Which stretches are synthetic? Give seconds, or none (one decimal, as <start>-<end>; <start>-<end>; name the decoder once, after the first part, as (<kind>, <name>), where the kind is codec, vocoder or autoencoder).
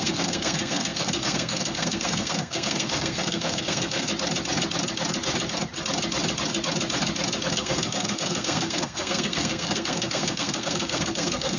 0.0-4.1 (codec, SNAC); 7.5-11.6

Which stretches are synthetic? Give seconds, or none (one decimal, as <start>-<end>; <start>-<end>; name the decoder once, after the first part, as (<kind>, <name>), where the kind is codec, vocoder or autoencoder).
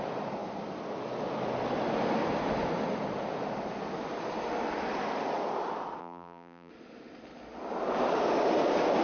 6.0-6.7 (vocoder, BigVGAN v2)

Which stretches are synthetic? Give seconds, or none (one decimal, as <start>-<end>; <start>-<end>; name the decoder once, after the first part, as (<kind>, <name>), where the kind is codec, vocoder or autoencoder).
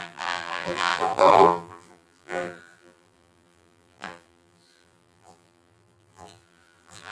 0.0-7.1 (vocoder, BigVGAN v2)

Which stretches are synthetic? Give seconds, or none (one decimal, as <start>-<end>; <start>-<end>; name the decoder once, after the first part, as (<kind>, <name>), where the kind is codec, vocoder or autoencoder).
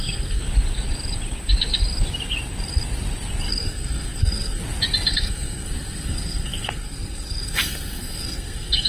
0.0-0.4 (codec, SNAC); 3.5-4.6; 5.1-8.9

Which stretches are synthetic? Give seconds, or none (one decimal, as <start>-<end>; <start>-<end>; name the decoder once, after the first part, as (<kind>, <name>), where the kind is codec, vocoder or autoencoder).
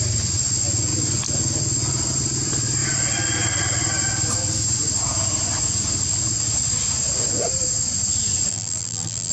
8.5-9.3 (vocoder, BigVGAN v2)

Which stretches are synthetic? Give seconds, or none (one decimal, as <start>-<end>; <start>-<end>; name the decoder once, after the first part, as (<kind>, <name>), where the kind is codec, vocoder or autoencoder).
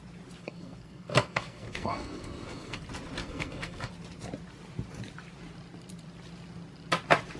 0.4-2.8 (codec, SNAC); 3.2-3.9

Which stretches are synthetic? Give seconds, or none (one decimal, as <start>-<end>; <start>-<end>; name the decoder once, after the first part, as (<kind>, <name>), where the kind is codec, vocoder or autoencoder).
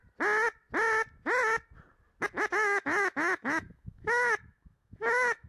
2.2-5.5 (autoencoder, DAC-VAE)